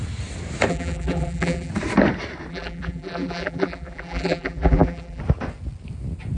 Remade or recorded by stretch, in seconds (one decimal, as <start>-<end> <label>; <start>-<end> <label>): 0.0-0.7 recorded; 0.7-1.7 remade; 1.7-2.5 recorded; 2.5-5.2 remade; 5.2-6.4 recorded